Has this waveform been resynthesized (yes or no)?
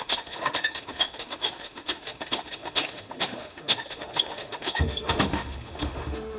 yes